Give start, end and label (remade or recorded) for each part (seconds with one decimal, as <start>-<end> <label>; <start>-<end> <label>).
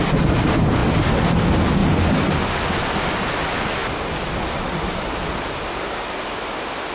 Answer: 0.0-6.9 recorded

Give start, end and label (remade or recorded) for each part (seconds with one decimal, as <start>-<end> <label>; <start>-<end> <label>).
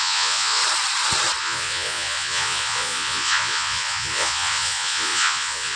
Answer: 0.0-0.6 remade; 0.6-1.4 recorded; 1.4-5.8 remade